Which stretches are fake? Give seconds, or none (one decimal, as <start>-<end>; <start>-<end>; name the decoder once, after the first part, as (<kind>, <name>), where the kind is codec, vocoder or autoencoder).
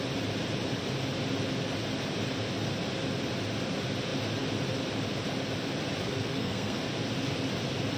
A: 6.0-6.8 (codec, SNAC)